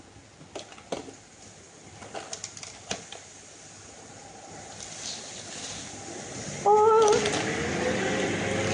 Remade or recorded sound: recorded